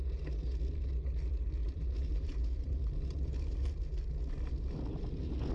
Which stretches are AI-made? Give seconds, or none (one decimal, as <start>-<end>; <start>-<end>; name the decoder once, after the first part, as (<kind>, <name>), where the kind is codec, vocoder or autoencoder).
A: 1.6-3.8 (vocoder, BigVGAN v2)